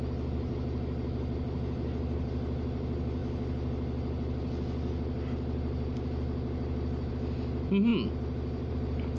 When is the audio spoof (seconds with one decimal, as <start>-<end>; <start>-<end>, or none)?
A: none